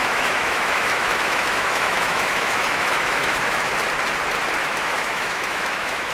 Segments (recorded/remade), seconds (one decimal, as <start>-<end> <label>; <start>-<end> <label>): 0.0-3.7 remade; 3.7-4.6 recorded; 4.6-6.1 remade

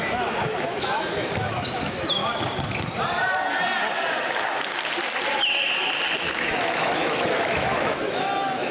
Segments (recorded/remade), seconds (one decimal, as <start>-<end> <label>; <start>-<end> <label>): 0.0-2.2 remade; 2.2-6.2 recorded; 6.2-8.7 remade

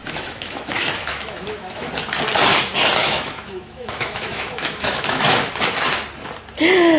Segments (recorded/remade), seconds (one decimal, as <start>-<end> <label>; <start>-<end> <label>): 0.0-1.9 remade; 1.9-3.0 recorded; 3.0-5.5 remade; 5.5-7.0 recorded

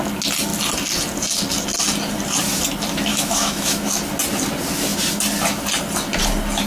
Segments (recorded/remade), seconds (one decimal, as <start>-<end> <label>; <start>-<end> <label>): 0.0-3.1 recorded; 3.1-3.9 remade; 3.9-6.7 recorded

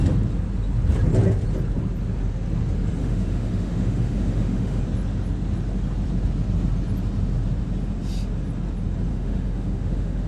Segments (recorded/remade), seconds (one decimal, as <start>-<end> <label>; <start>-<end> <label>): 0.0-3.0 recorded; 3.0-4.8 remade; 4.8-9.1 recorded; 9.1-10.3 remade

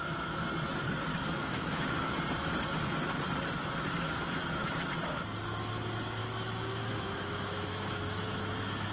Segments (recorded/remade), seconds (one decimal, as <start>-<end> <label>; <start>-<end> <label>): 0.0-1.1 recorded; 1.1-2.1 remade; 2.1-4.4 recorded; 4.4-4.9 remade; 4.9-6.2 recorded; 6.2-8.9 remade

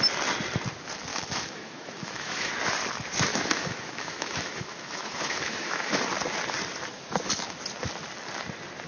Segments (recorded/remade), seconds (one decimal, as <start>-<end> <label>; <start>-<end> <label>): 0.0-1.1 recorded; 1.1-2.5 remade; 2.5-3.3 recorded; 3.3-6.0 remade; 6.0-8.9 recorded

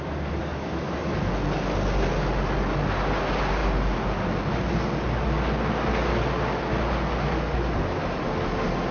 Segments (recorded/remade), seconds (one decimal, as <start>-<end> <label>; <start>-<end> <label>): 0.0-0.5 recorded; 0.5-1.3 remade; 1.3-8.9 recorded